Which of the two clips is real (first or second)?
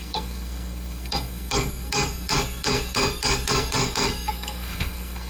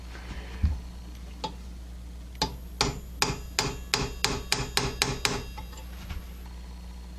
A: second